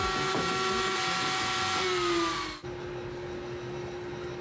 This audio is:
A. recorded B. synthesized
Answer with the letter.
A